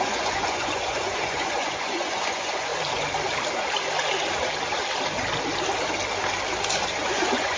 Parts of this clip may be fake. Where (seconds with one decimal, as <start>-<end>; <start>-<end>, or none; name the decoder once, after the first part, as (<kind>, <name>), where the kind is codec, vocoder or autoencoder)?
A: 0.0-2.7 (vocoder, Vocos); 7.1-7.6